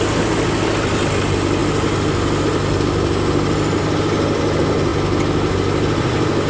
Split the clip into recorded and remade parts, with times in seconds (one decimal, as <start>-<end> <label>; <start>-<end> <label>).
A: 0.0-6.5 recorded

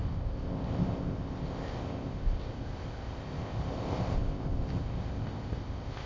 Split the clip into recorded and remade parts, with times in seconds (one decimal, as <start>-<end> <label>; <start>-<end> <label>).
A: 0.0-6.1 remade